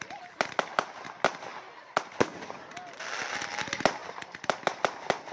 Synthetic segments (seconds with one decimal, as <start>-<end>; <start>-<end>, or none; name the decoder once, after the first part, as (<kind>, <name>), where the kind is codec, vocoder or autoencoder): none